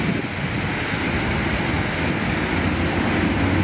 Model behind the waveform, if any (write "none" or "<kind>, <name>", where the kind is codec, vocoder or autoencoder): none